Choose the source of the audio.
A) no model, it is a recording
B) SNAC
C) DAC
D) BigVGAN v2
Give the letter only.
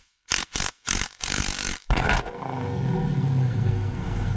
B